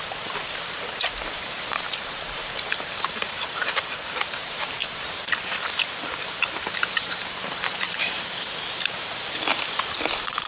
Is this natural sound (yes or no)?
no